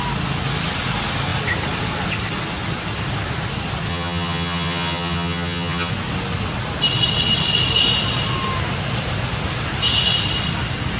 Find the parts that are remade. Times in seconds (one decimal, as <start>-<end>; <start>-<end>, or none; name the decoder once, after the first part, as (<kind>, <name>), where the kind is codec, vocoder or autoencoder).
3.9-5.9 (vocoder, HiFi-GAN)